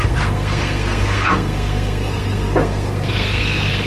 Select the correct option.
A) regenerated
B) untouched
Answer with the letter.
A